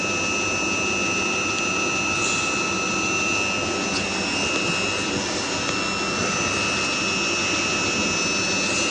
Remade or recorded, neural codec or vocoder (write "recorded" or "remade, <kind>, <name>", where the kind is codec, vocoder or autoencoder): recorded